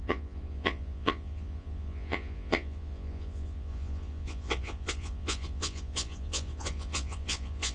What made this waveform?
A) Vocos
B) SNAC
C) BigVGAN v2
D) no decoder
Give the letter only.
A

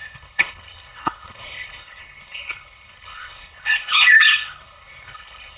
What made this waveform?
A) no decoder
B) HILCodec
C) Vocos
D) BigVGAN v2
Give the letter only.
B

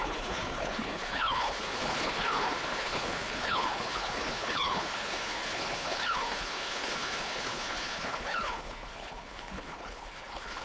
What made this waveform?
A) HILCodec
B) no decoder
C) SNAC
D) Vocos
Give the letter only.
A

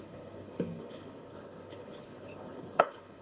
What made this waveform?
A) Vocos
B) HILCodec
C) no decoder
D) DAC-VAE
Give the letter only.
B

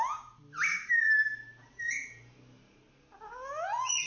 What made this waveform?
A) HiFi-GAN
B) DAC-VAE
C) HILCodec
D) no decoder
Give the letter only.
D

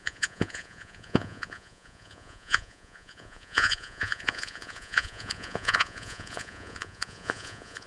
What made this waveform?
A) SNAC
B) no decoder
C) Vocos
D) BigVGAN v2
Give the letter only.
C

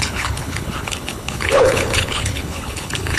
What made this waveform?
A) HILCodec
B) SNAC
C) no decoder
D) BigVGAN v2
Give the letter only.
A